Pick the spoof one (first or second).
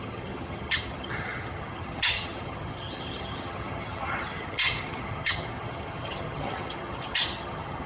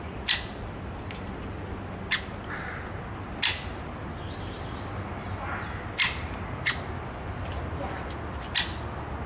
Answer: first